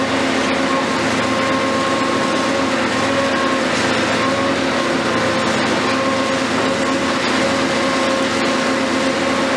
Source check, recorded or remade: recorded